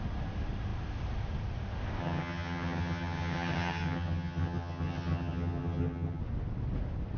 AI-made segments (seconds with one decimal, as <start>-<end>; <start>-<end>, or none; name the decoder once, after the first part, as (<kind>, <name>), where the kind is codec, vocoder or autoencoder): 2.0-6.2 (vocoder, HiFi-GAN)